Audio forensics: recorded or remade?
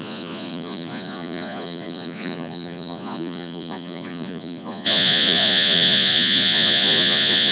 remade